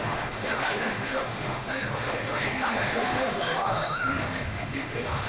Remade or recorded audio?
remade